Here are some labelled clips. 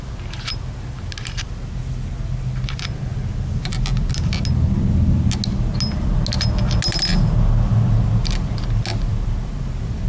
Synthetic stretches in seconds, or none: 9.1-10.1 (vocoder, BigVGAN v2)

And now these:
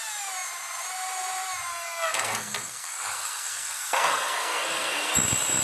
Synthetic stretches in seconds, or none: 1.7-5.1 (codec, SNAC)

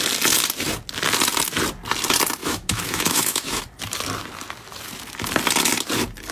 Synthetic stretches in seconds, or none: 2.4-3.6 (autoencoder, DAC-VAE)

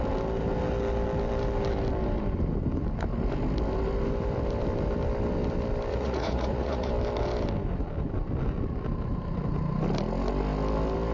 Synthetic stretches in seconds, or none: 5.9-6.9 (vocoder, Vocos)

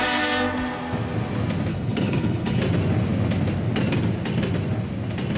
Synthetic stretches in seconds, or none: 1.7-2.6 (codec, HILCodec)

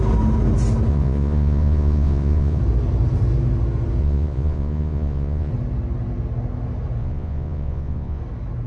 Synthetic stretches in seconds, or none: 0.9-2.6 (vocoder, Vocos); 4.0-5.5; 7.0-8.2